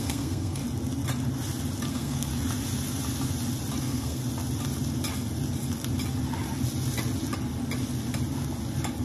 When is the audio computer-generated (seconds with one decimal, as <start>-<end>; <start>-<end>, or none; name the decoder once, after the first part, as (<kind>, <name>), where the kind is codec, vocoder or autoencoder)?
0.0-0.6 (codec, SNAC); 1.9-2.3; 3.8-4.2